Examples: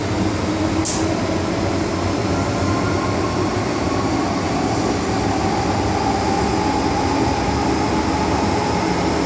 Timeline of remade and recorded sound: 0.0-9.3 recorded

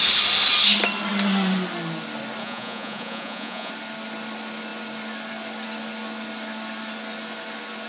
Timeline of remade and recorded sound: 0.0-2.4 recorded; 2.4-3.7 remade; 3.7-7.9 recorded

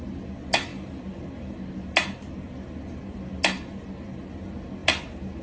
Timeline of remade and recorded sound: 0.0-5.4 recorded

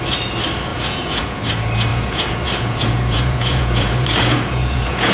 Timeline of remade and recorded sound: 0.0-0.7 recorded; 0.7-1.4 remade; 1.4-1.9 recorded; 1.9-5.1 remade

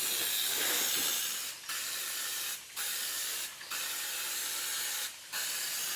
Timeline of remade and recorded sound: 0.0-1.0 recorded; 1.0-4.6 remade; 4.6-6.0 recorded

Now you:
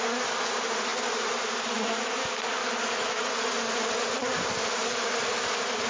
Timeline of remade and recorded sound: 0.0-5.9 recorded